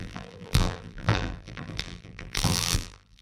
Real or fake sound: fake